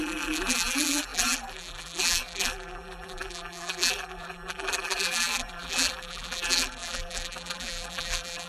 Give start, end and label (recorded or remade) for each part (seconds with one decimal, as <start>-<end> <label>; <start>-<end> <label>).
0.0-8.5 remade